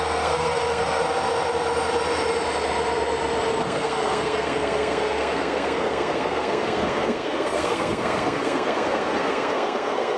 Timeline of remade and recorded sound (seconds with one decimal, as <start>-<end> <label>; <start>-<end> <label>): 0.0-1.0 remade; 1.0-3.6 recorded; 3.6-10.2 remade